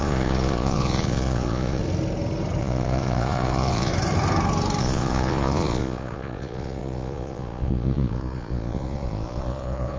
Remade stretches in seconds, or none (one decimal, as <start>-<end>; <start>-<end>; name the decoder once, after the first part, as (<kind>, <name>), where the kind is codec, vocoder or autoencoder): 0.0-1.8 (vocoder, Vocos); 2.6-3.9; 4.8-10.0